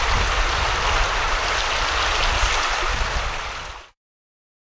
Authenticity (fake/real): real